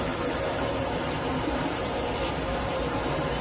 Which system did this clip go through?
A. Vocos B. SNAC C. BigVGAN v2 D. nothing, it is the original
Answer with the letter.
C